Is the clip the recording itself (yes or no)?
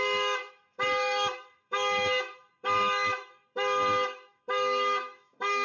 no